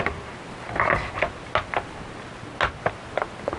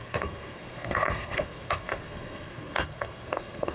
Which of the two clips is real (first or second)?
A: first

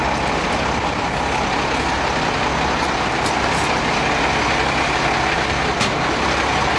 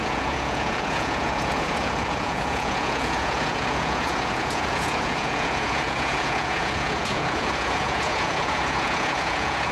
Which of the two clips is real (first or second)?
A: first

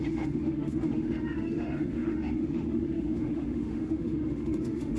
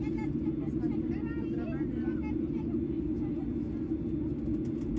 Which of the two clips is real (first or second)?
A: second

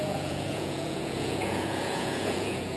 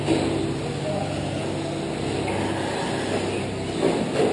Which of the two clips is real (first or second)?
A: second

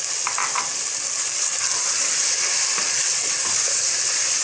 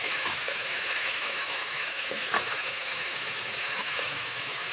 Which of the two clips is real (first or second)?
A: first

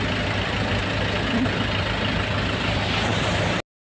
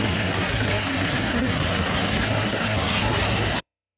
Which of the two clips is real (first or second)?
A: first